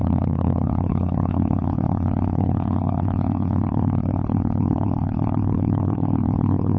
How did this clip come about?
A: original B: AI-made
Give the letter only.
B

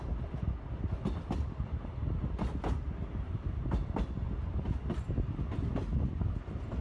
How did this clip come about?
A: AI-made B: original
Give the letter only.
B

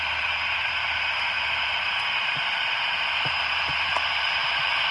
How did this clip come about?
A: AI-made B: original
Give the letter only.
A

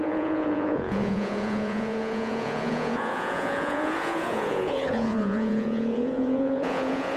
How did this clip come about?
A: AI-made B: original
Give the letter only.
A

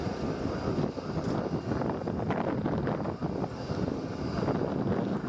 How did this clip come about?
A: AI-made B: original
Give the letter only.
B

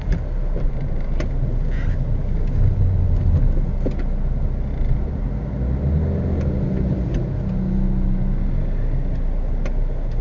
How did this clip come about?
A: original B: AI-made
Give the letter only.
A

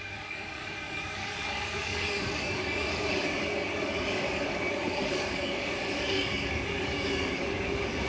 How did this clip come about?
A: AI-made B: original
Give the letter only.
A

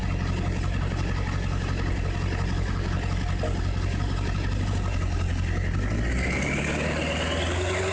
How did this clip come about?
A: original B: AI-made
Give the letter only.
A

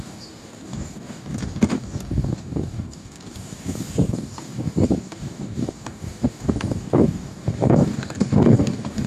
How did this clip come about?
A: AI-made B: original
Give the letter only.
A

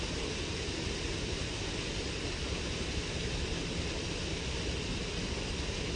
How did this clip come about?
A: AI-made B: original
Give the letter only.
B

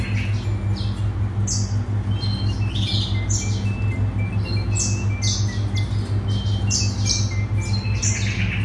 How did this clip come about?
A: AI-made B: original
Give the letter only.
B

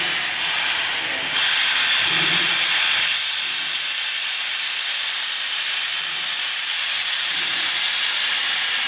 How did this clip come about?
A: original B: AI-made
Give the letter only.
B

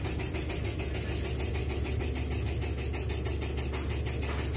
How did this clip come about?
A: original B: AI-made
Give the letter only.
A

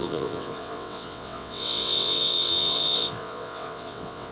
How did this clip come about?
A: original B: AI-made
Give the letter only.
B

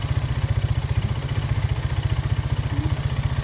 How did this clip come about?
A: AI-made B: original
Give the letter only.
B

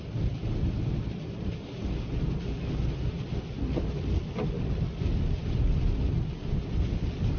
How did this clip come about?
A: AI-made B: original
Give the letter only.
B